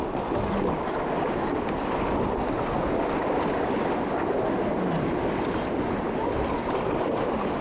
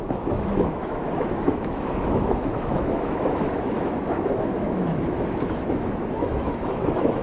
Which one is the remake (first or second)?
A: second